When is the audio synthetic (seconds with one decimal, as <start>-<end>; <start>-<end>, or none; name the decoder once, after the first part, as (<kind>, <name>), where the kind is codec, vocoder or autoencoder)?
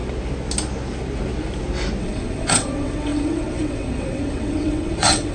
2.0-5.3 (vocoder, WaveNeXt)